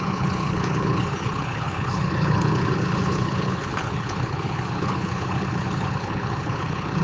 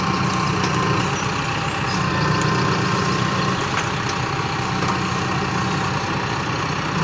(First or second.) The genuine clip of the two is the second